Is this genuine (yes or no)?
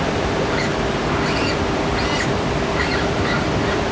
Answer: no